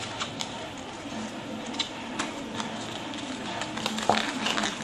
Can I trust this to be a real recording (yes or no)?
yes